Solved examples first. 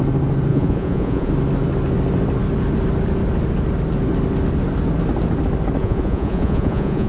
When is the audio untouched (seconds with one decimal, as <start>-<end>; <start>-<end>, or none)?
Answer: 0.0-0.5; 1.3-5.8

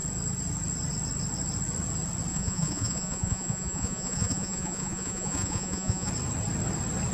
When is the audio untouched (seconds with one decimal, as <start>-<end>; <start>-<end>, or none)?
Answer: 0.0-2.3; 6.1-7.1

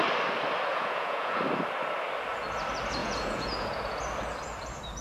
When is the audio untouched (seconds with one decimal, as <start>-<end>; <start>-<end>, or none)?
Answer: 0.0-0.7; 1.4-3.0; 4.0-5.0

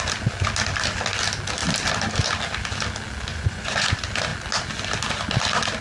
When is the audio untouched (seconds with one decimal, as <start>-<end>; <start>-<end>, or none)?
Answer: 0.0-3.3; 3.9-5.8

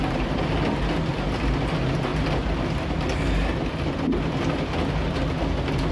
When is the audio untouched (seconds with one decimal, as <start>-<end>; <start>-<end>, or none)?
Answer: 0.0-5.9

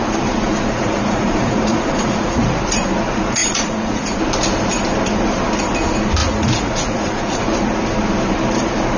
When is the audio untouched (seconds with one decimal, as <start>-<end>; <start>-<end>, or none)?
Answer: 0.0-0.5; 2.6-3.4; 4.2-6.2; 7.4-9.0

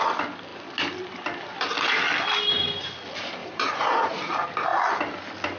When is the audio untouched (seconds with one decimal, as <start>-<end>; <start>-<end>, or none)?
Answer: 0.0-3.4; 4.3-5.6

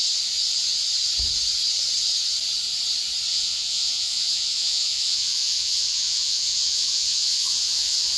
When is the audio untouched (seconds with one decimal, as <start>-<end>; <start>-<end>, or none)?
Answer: 0.0-3.3